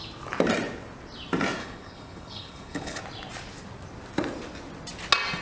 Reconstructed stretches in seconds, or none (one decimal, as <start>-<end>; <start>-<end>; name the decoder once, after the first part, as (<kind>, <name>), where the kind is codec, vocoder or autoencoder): 1.6-3.0 (codec, HILCodec)